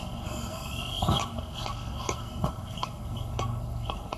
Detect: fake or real fake